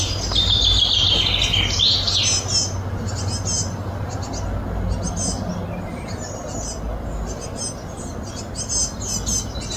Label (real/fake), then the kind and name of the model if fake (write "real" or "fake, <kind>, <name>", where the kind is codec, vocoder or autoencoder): real